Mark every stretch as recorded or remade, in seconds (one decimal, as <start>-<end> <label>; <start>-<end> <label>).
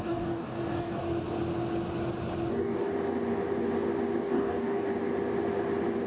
0.0-1.0 remade; 1.0-2.5 recorded; 2.5-2.9 remade; 2.9-4.2 recorded; 4.2-4.9 remade; 4.9-6.1 recorded